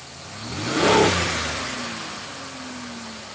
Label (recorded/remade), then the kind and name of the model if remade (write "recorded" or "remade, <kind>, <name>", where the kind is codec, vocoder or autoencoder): recorded